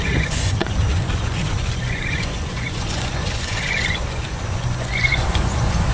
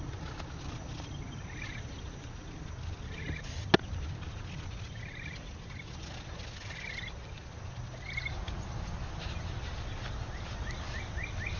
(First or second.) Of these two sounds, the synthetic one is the first